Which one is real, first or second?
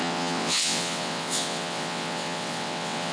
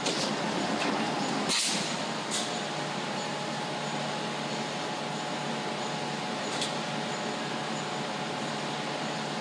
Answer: second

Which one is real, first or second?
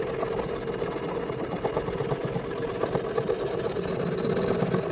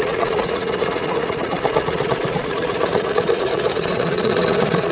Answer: first